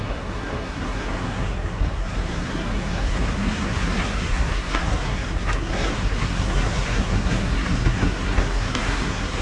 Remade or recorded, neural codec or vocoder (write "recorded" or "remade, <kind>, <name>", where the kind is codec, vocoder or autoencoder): remade, codec, SNAC